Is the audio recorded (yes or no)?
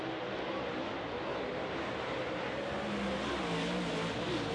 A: yes